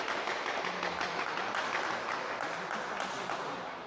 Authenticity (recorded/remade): recorded